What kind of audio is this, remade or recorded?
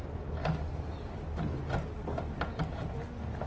recorded